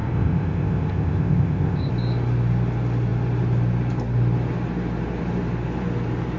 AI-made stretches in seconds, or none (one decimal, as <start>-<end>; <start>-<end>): 0.0-1.9